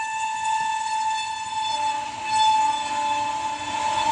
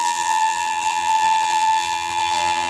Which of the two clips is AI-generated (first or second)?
second